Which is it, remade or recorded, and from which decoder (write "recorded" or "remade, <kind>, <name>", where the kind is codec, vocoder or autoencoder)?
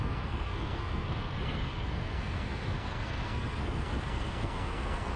remade, codec, SNAC